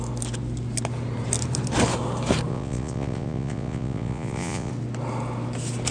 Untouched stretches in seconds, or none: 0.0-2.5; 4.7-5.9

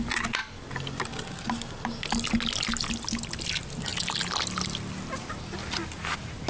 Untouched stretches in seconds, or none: 0.0-6.5